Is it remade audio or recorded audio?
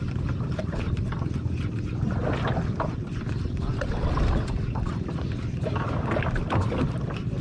recorded